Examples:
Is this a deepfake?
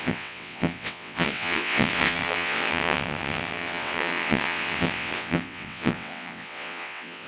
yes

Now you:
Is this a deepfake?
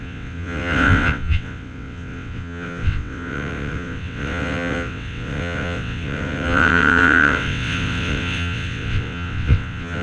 yes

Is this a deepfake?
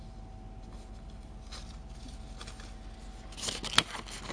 no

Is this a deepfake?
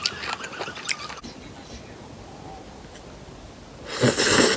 no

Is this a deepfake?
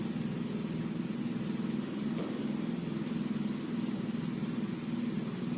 no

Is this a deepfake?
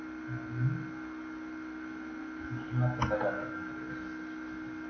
no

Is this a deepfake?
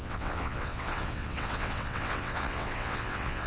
yes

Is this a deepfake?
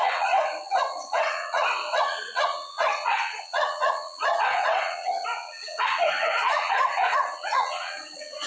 yes